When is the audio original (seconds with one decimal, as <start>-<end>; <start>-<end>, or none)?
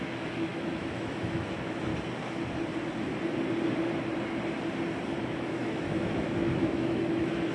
1.9-5.2